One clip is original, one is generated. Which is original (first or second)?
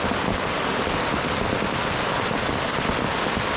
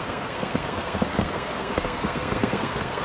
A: first